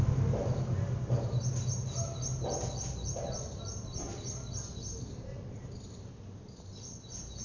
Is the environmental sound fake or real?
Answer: real